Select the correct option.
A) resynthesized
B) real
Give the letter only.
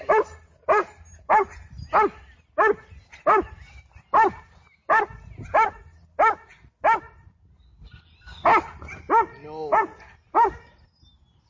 B